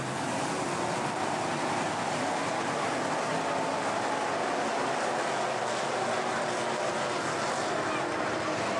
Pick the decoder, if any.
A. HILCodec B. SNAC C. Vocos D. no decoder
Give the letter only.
D